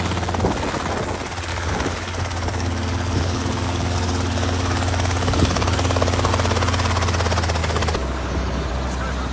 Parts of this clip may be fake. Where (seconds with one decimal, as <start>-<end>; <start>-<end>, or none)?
1.5-6.3; 7.6-8.7